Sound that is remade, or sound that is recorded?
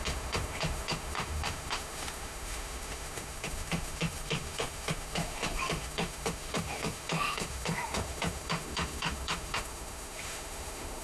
remade